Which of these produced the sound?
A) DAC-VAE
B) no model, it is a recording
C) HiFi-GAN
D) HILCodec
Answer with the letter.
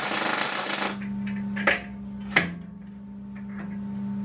B